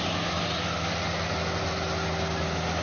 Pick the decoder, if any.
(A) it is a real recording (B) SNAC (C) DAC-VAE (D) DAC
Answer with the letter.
A